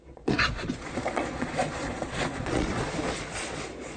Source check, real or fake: fake